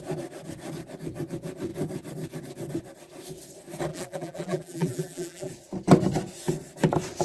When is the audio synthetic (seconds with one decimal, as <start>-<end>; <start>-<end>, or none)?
3.9-5.5